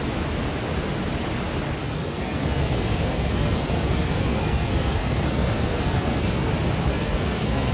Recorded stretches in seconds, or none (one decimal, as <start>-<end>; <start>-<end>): 0.0-1.9; 6.5-6.9